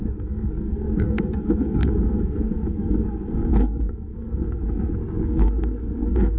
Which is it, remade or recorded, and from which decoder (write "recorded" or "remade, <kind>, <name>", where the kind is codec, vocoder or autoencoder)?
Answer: remade, codec, SNAC